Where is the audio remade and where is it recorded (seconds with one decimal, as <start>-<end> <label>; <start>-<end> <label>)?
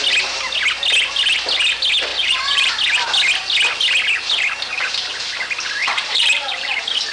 0.0-2.1 recorded; 2.1-2.7 remade; 2.7-5.8 recorded; 5.8-7.1 remade